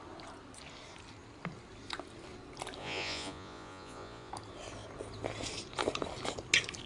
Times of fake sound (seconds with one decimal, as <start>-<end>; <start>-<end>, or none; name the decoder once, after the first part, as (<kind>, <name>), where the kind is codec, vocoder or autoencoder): 2.8-4.3 (vocoder, Vocos)